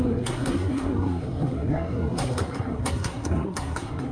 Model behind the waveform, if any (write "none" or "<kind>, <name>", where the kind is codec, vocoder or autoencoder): codec, SNAC